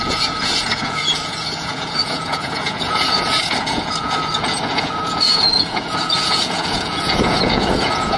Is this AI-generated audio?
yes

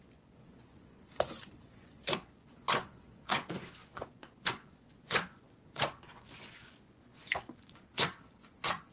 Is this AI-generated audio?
yes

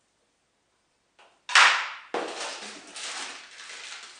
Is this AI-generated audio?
no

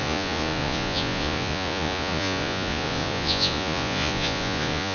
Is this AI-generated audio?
yes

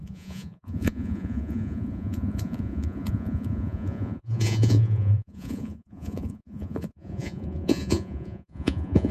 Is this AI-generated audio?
yes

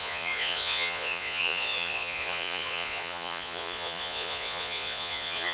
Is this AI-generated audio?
yes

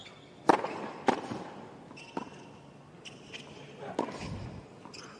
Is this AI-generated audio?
no